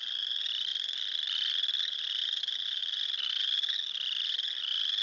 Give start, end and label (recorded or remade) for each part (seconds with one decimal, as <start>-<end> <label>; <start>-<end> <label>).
0.0-5.0 recorded